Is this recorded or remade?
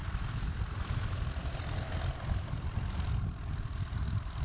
recorded